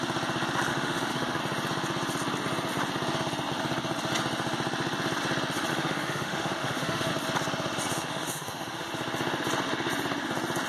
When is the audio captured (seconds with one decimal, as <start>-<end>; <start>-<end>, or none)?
0.0-0.7; 1.4-5.7; 7.1-7.9; 8.9-10.7